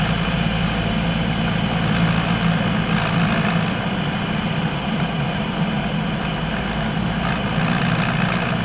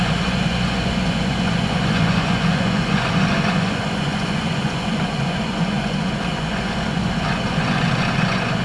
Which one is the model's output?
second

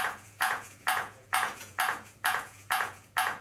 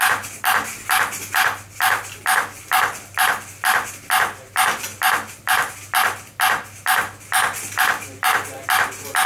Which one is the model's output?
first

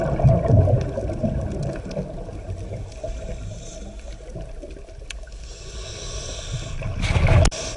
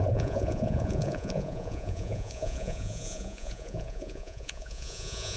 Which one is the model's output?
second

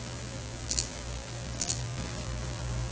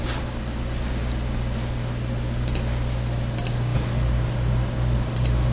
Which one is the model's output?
first